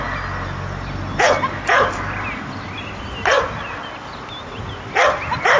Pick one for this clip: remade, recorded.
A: recorded